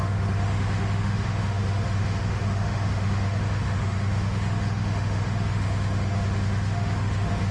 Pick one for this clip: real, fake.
fake